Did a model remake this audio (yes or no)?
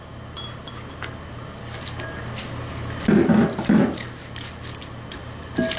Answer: no